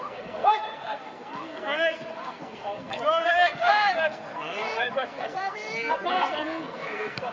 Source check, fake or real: fake